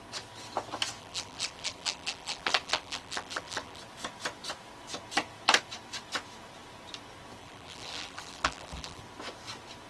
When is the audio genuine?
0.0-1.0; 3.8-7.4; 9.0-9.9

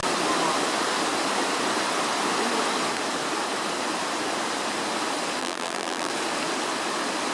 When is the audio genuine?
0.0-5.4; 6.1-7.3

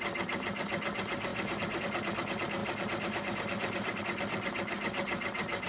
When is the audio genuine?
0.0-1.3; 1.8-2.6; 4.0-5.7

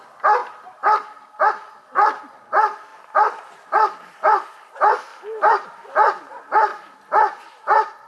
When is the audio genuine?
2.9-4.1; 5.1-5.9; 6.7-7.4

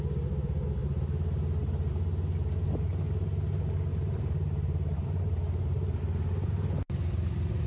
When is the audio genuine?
0.0-3.9; 6.0-7.7

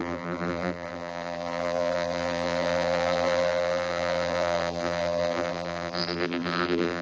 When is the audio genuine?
none

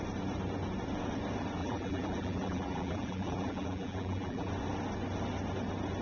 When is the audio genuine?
0.0-1.6; 4.5-6.0